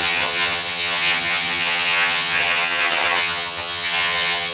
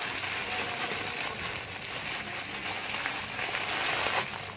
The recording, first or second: second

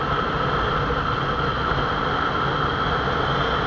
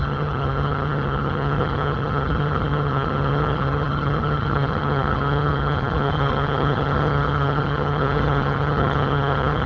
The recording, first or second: first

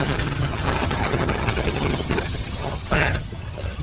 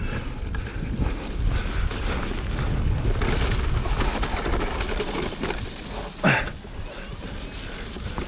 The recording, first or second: second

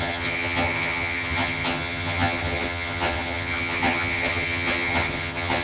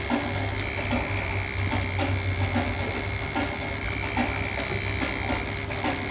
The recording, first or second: second